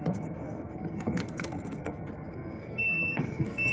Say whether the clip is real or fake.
fake